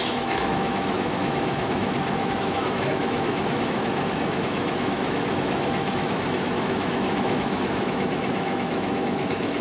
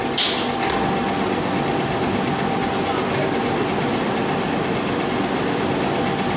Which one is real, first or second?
second